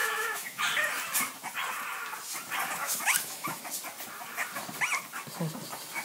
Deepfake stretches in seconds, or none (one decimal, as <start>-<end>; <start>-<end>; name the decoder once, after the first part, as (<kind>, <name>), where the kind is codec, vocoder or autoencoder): 0.0-0.6 (autoencoder, DAC-VAE); 2.8-3.6